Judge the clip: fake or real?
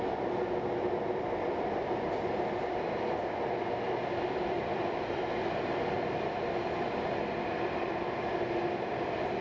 real